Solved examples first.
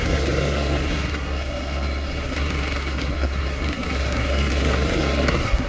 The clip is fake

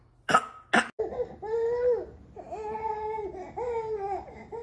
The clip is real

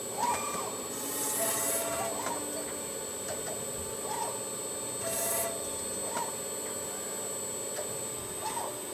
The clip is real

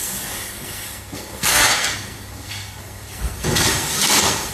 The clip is fake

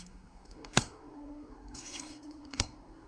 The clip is fake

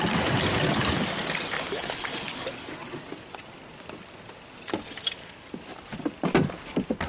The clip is real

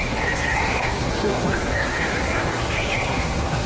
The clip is fake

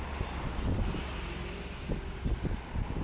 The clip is real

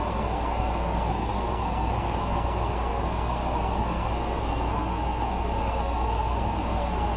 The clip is fake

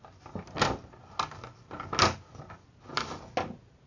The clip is real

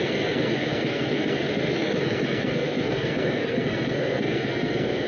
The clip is fake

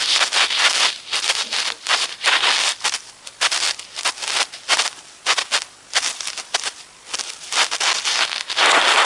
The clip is real